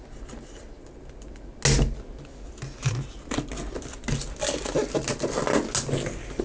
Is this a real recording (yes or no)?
yes